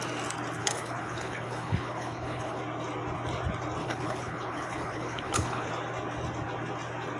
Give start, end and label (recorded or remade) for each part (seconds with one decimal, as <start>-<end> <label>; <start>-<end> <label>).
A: 0.0-0.6 recorded; 0.6-2.6 remade; 2.6-3.8 recorded; 3.8-5.7 remade; 5.7-7.2 recorded